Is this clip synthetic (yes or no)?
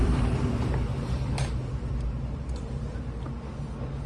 yes